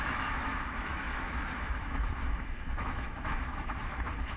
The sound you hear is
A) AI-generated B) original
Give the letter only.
A